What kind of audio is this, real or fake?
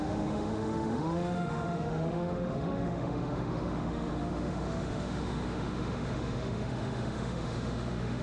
fake